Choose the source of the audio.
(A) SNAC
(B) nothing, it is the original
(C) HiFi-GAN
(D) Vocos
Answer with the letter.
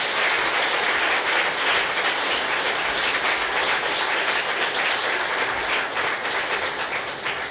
B